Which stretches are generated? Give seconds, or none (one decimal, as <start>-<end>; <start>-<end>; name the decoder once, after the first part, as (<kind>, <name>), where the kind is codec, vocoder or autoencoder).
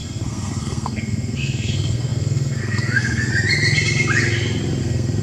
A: 0.0-3.3 (codec, SNAC); 4.8-5.2